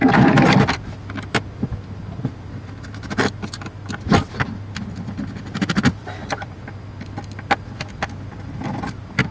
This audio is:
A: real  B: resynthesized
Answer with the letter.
A